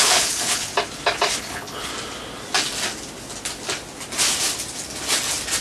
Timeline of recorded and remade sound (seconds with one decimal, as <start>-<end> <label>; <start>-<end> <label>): 0.0-0.7 remade; 0.7-1.4 recorded; 1.4-1.9 remade; 1.9-5.6 recorded